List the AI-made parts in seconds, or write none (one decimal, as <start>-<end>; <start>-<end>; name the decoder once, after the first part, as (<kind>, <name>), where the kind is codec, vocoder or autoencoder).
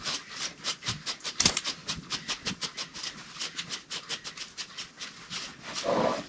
0.0-1.8 (vocoder, BigVGAN v2); 2.5-2.9